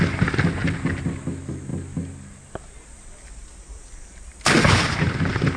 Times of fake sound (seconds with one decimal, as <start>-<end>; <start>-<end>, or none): none